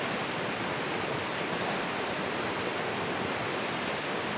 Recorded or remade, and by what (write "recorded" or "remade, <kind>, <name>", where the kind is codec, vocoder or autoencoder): recorded